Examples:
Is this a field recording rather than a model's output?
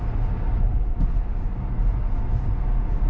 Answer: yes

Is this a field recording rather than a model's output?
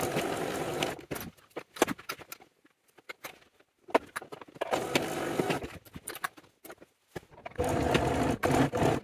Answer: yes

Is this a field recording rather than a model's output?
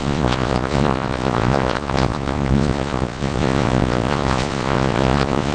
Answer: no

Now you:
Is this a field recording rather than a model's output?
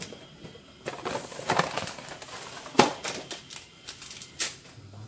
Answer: yes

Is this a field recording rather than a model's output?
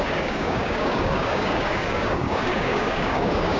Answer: no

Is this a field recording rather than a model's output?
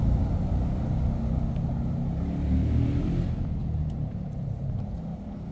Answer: yes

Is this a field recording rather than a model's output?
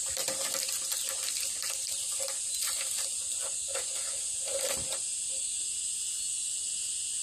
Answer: yes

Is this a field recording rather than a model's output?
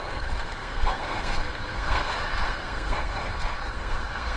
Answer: no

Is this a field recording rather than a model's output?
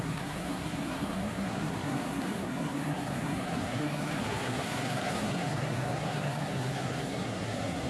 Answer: no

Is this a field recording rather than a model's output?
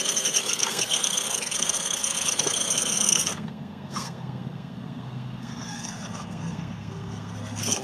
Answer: no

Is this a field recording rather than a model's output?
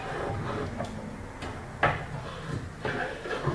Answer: yes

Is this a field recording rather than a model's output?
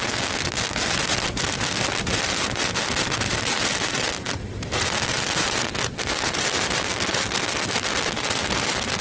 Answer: yes